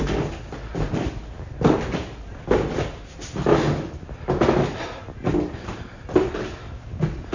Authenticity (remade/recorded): recorded